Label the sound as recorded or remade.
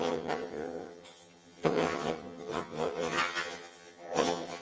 remade